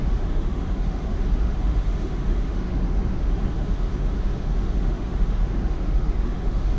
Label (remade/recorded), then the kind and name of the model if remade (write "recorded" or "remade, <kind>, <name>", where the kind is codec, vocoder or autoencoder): remade, autoencoder, DAC-VAE